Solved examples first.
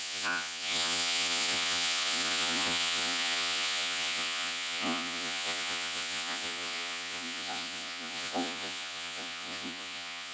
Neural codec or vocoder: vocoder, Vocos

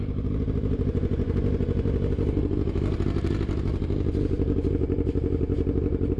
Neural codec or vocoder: none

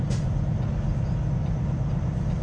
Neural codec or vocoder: none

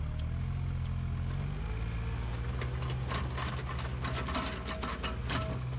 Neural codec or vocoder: none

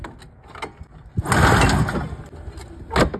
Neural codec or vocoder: none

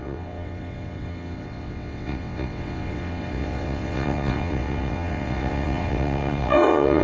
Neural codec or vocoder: vocoder, WaveNeXt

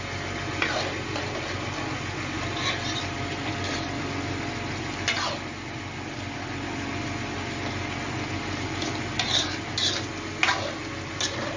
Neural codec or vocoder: none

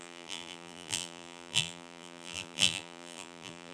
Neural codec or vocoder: vocoder, BigVGAN v2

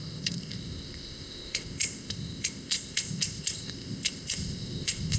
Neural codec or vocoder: codec, ZipCodec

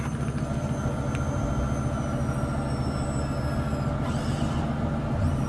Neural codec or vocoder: none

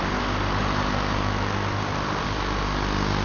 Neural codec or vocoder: none